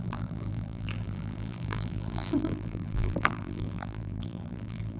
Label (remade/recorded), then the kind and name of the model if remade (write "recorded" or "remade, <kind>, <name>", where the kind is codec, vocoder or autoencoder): remade, vocoder, BigVGAN v2